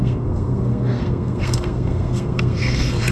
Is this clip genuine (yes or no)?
no